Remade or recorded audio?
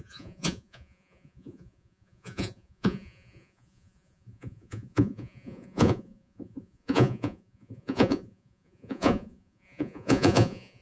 remade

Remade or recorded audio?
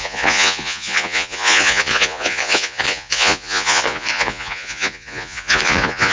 remade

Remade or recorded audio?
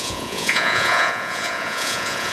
remade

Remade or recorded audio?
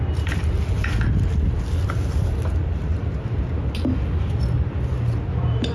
recorded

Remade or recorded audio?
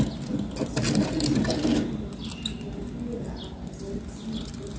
recorded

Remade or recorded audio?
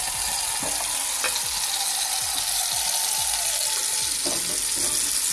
recorded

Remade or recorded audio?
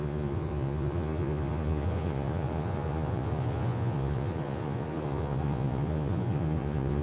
remade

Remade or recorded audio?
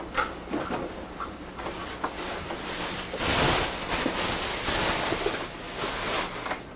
recorded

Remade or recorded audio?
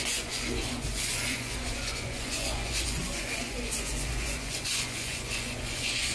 remade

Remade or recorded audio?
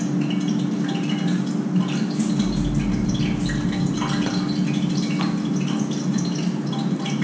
recorded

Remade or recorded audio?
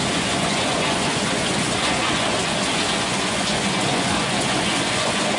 remade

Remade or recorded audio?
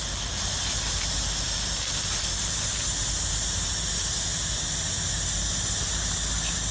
recorded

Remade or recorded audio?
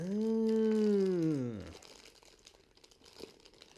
recorded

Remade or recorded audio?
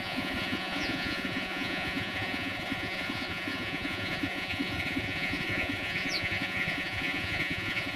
remade